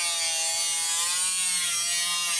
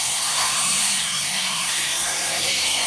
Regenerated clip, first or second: second